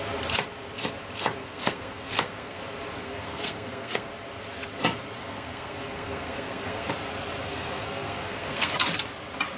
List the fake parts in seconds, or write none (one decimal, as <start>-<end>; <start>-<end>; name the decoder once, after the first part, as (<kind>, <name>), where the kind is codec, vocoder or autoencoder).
1.4-2.6 (codec, SNAC); 3.0-4.1; 5.2-6.9; 7.4-8.7